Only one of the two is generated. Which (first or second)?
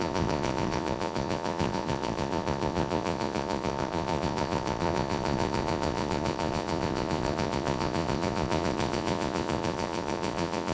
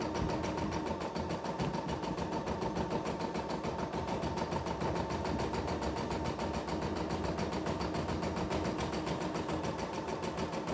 first